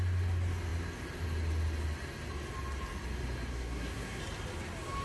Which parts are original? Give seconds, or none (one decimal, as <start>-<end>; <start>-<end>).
0.0-3.5; 4.2-5.0